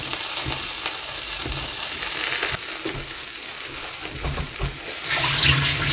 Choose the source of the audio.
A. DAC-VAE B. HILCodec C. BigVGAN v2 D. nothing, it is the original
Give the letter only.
D